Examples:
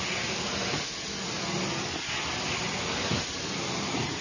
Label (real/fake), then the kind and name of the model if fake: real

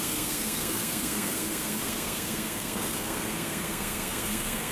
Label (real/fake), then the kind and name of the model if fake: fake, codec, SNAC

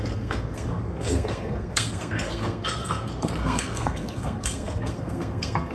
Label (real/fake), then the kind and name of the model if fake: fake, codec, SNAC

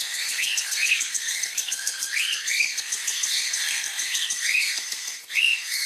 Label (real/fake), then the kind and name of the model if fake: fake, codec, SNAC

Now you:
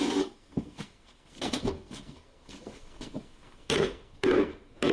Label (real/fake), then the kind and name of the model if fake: fake, codec, SNAC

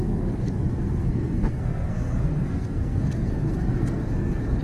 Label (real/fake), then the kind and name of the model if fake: fake, codec, SNAC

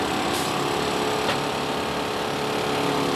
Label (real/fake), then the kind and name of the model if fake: real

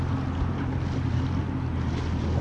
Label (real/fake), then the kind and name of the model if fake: real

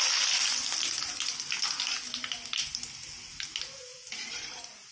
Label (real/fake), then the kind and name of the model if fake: real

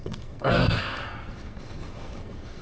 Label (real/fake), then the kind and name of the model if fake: fake, codec, SNAC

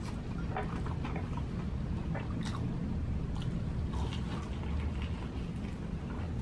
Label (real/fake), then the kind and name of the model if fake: real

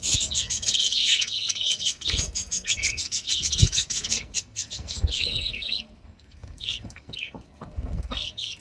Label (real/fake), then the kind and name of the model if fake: fake, codec, SNAC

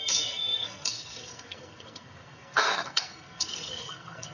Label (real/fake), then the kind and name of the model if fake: fake, codec, SNAC